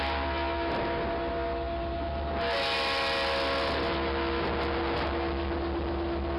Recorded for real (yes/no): yes